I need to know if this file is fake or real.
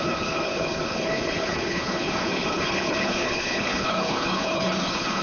fake